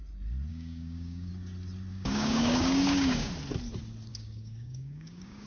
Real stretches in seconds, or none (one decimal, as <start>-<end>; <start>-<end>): 0.0-0.5; 1.3-1.9; 3.3-4.1